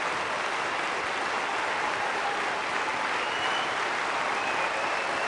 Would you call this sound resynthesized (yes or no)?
no